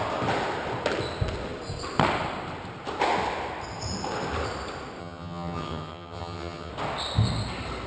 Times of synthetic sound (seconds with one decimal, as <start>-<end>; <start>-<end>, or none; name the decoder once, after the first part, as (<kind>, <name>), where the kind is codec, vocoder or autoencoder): 5.0-6.7 (vocoder, HiFi-GAN)